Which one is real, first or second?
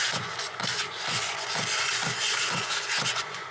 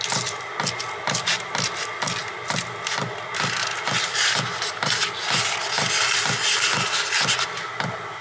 second